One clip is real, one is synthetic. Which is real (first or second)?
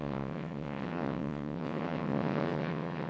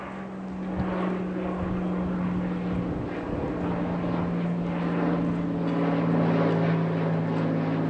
second